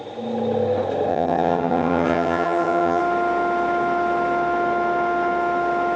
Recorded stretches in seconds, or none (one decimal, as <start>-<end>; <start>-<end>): 0.0-1.1; 3.0-6.0